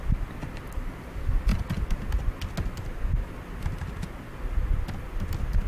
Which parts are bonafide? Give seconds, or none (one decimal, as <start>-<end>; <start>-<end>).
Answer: 0.0-5.7